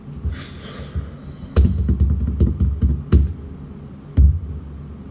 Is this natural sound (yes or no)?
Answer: yes